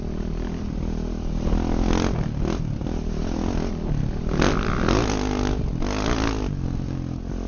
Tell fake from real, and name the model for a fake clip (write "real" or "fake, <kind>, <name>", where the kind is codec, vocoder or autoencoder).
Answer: real